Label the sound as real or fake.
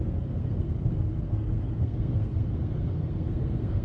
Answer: fake